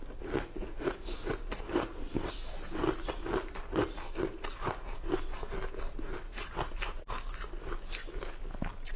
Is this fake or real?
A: real